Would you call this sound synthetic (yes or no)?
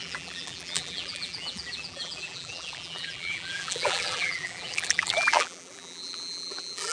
yes